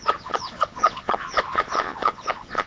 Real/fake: fake